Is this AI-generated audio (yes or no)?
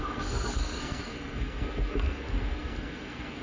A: yes